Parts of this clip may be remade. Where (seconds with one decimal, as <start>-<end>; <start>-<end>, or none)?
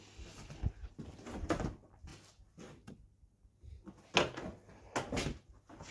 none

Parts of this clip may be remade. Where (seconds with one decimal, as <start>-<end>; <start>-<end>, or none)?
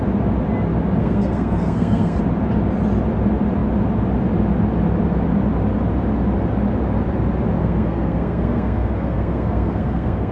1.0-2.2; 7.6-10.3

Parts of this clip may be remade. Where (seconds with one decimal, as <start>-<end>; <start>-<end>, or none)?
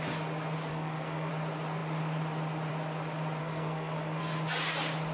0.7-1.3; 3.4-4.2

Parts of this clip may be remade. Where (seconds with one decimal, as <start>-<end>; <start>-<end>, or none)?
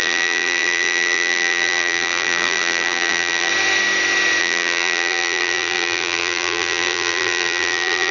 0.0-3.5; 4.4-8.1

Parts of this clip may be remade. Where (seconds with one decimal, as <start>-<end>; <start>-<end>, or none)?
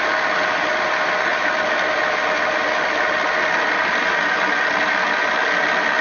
none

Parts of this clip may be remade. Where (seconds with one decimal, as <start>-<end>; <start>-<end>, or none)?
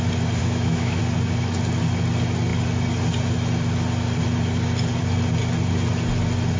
0.4-1.0